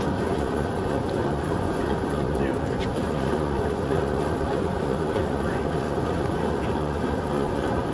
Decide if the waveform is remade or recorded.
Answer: remade